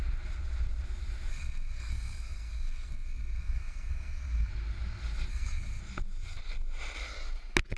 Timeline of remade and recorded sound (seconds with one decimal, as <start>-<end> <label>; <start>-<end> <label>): 0.0-1.3 recorded; 1.3-4.5 remade; 4.5-5.3 recorded; 5.3-5.8 remade; 5.8-7.8 recorded